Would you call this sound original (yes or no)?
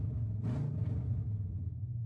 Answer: yes